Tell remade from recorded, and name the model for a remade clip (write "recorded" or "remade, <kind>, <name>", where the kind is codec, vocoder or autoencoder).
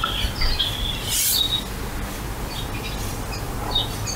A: recorded